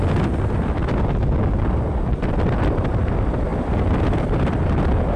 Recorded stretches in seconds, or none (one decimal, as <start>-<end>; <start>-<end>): 0.8-1.6; 3.5-4.0